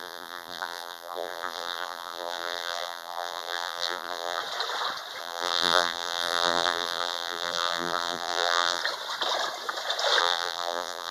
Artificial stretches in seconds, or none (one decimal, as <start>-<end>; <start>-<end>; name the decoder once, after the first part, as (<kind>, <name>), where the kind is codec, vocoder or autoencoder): 0.0-4.4 (vocoder, BigVGAN v2); 5.2-8.8; 10.2-11.1

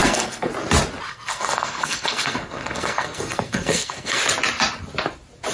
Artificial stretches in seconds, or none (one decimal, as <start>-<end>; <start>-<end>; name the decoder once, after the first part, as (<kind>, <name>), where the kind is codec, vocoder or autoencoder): 0.0-0.5 (codec, SNAC); 1.1-4.2

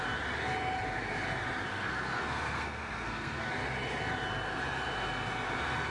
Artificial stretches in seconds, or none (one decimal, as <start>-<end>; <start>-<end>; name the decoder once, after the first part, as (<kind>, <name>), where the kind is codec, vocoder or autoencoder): 1.7-3.5 (codec, SNAC)